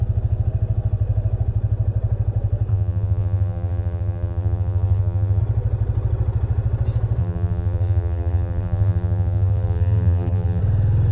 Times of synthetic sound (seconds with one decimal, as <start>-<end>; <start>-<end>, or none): 2.7-5.4; 7.2-10.6